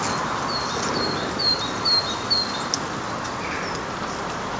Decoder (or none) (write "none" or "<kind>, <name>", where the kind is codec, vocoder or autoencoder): none